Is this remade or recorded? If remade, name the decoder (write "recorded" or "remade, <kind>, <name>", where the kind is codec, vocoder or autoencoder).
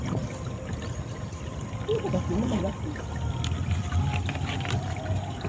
recorded